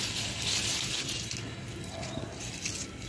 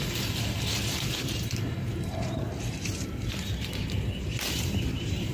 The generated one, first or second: second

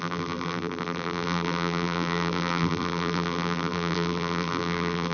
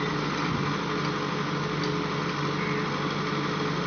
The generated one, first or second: first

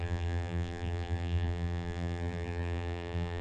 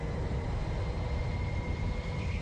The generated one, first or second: first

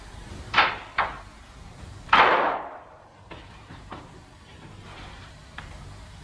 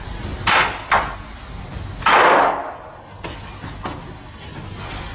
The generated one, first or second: first